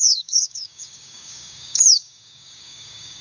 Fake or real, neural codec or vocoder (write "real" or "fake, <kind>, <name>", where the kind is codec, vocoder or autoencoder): fake, codec, DAC